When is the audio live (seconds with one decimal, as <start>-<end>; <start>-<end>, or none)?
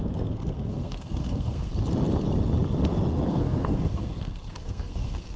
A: 1.7-3.3